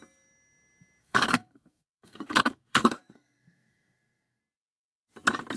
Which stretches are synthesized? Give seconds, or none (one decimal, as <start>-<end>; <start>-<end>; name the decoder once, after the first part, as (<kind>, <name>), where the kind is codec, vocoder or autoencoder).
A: 1.0-4.4 (codec, SNAC)